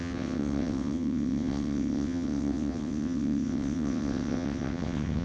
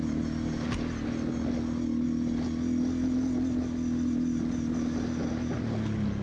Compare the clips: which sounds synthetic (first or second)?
first